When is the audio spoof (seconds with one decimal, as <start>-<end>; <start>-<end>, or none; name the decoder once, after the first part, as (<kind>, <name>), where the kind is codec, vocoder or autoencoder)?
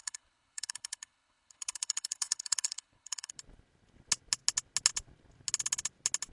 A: 0.0-3.3 (codec, HILCodec)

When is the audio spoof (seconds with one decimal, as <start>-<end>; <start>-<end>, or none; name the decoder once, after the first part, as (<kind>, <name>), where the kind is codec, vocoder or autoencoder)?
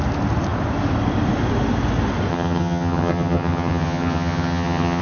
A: 2.3-5.0 (vocoder, HiFi-GAN)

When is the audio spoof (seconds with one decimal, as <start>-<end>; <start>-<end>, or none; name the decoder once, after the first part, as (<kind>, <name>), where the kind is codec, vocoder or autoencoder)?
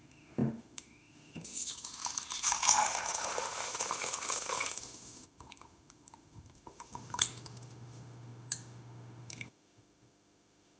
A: 0.0-10.8 (autoencoder, DAC-VAE)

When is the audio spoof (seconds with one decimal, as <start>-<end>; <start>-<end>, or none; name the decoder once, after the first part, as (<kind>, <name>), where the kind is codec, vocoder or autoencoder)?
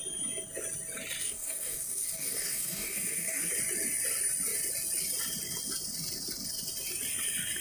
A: 1.2-3.5 (codec, DAC)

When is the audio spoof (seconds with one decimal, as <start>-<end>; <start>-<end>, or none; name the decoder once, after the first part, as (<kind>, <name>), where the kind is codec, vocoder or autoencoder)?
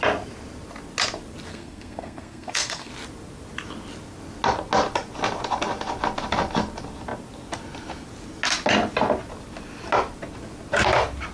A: 1.5-2.9 (codec, SNAC)